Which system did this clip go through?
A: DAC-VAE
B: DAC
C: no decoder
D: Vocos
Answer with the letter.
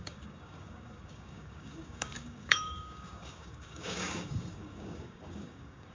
B